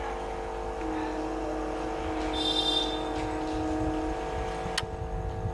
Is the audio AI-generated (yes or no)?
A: no